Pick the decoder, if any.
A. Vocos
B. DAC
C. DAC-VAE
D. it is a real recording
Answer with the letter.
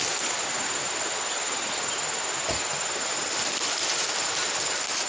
D